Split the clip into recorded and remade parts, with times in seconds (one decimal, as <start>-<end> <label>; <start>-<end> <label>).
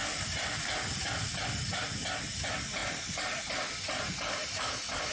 0.0-1.5 remade; 1.5-2.8 recorded; 2.8-5.1 remade